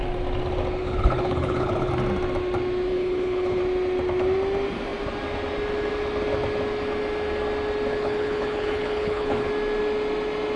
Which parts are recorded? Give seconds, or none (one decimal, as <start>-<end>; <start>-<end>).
0.0-0.8; 1.9-2.9; 3.6-7.9; 9.5-10.6